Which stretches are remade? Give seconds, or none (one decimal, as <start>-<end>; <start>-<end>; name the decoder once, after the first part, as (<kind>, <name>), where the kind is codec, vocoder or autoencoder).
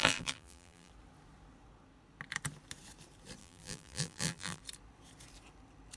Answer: 0.0-0.9 (vocoder, BigVGAN v2); 3.4-4.6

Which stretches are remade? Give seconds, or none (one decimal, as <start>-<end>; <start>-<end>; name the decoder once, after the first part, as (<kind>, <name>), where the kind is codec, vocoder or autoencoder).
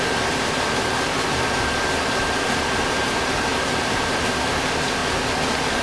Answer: 0.0-5.0 (vocoder, BigVGAN v2)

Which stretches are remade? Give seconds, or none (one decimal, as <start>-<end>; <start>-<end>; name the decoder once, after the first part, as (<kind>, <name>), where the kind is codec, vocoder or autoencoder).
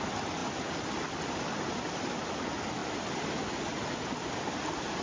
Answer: 0.4-1.5 (vocoder, BigVGAN v2); 2.8-3.4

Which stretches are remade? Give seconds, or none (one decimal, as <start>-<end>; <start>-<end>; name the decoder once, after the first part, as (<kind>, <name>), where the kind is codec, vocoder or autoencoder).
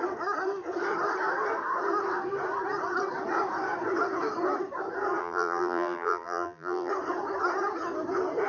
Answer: 5.2-6.9 (vocoder, BigVGAN v2)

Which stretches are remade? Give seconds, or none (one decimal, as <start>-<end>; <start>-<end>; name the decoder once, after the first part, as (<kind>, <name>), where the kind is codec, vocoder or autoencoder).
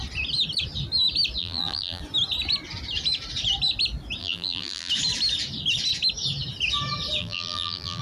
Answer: 1.4-2.0 (vocoder, BigVGAN v2); 4.2-4.9; 7.2-8.0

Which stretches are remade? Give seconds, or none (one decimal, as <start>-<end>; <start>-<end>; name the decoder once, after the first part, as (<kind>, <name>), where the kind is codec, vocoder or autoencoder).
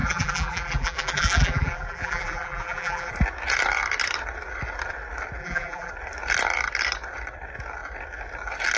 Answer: 0.0-3.1 (vocoder, BigVGAN v2); 5.4-5.9